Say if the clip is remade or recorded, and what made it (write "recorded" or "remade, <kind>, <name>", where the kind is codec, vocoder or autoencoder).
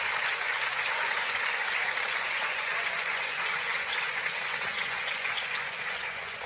remade, vocoder, Vocos